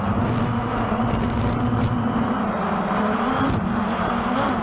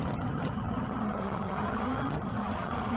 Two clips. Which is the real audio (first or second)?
first